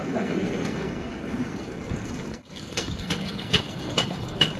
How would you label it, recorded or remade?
remade